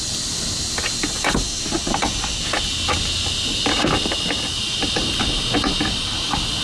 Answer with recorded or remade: recorded